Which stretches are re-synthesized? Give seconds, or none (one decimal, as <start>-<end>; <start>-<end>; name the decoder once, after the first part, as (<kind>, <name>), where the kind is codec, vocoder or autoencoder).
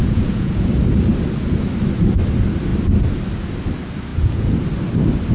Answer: 0.0-0.7 (vocoder, Vocos); 4.1-4.6